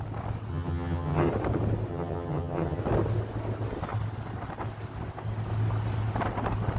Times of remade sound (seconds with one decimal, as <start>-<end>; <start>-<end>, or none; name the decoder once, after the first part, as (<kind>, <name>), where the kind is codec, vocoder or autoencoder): 0.5-1.3 (vocoder, HiFi-GAN); 1.9-2.8

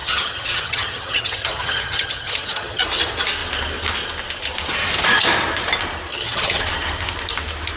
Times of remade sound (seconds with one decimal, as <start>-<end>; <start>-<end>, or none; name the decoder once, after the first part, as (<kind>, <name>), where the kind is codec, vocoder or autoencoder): 0.0-2.8 (vocoder, HiFi-GAN); 6.1-6.6

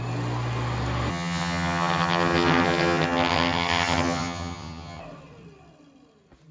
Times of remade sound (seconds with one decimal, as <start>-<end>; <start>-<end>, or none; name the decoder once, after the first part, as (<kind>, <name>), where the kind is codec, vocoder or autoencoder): 1.1-5.0 (vocoder, HiFi-GAN)

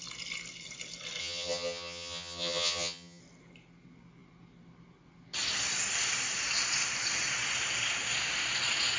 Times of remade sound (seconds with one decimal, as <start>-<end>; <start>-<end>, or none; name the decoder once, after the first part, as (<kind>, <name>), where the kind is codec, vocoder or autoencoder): 1.2-3.2 (vocoder, HiFi-GAN)